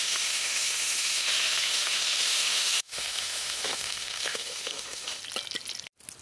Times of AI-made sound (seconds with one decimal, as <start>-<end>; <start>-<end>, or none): 0.0-5.2